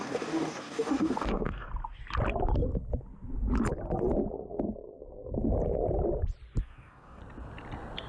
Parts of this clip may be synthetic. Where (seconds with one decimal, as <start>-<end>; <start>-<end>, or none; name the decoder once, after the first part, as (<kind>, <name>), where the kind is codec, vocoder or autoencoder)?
0.0-1.7 (codec, DAC); 6.6-7.2